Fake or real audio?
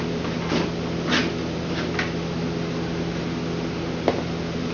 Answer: real